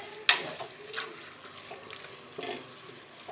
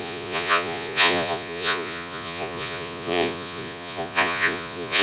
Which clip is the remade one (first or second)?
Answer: second